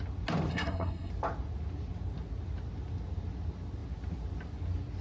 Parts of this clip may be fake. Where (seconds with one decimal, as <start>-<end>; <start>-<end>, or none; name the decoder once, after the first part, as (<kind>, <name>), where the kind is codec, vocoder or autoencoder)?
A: 0.5-1.1 (codec, SNAC)